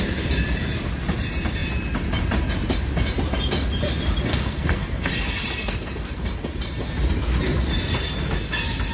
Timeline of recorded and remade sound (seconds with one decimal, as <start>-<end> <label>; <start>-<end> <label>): 0.0-4.3 recorded; 4.3-5.1 remade; 5.1-5.6 recorded; 5.6-6.3 remade; 6.3-8.9 recorded